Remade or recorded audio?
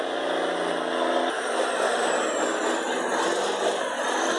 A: recorded